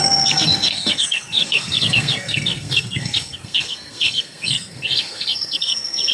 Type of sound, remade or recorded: remade